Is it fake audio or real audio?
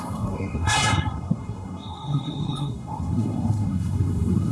fake